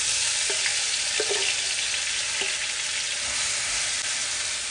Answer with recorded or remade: recorded